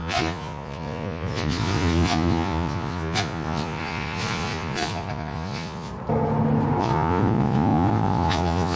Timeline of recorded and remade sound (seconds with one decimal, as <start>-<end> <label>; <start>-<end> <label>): 0.0-5.9 remade; 5.9-6.8 recorded; 6.8-8.8 remade